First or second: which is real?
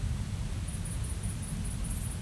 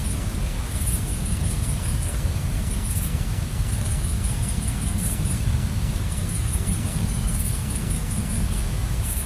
first